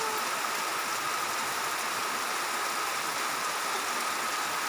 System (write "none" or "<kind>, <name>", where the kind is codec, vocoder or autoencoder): none